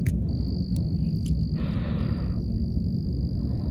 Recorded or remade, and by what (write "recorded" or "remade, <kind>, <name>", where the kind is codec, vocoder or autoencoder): remade, vocoder, BigVGAN v2